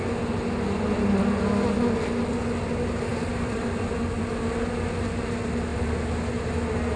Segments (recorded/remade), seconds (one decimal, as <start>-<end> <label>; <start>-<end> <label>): 0.0-3.1 recorded; 3.1-4.3 remade; 4.3-7.0 recorded